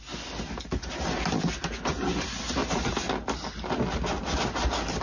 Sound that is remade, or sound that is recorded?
recorded